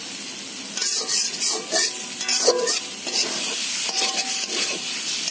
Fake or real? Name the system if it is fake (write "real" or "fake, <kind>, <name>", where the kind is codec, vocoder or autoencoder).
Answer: real